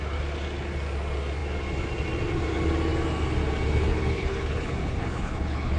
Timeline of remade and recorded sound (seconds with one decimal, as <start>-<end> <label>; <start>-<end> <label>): 0.0-3.9 recorded; 3.9-5.8 remade

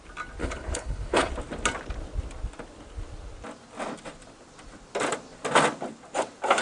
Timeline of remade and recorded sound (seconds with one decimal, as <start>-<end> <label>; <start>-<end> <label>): 0.0-0.4 recorded; 0.4-1.3 remade; 1.3-6.6 recorded

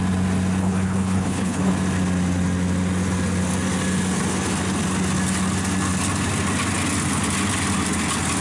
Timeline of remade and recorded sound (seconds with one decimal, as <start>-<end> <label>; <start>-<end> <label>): 0.0-0.6 recorded; 0.6-1.7 remade; 1.7-8.4 recorded

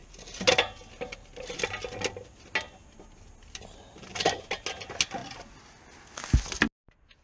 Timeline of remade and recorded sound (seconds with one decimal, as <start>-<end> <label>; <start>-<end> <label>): 0.0-7.2 recorded